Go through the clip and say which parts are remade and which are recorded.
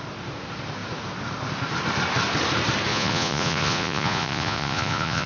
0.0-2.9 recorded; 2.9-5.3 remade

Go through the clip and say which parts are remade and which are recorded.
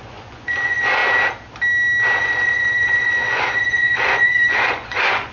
0.0-1.0 remade; 1.0-2.2 recorded; 2.2-5.3 remade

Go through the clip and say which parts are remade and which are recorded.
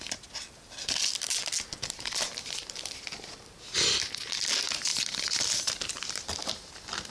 0.0-7.1 recorded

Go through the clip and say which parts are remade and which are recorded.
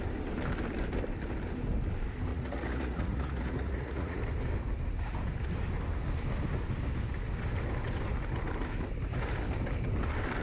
0.0-2.3 recorded; 2.3-4.2 remade; 4.2-10.4 recorded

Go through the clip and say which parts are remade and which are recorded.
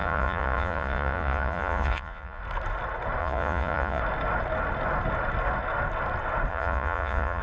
0.0-2.4 remade; 2.4-3.2 recorded; 3.2-4.0 remade; 4.0-6.5 recorded; 6.5-7.4 remade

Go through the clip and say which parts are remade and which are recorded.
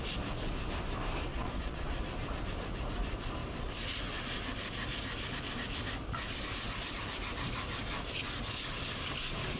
0.0-1.3 recorded; 1.3-2.0 remade; 2.0-9.6 recorded